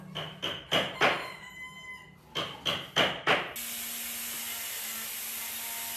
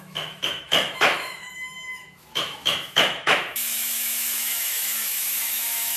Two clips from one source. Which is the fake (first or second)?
second